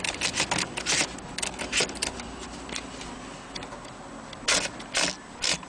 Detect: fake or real real